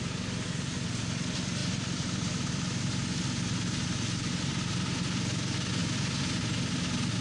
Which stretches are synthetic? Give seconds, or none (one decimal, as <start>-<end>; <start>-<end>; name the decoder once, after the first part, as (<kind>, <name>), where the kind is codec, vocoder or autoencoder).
none